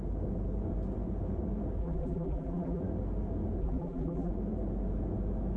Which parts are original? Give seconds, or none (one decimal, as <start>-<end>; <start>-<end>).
0.0-1.8; 2.8-3.6; 4.3-5.6